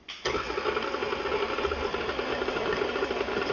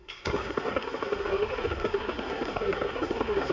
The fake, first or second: second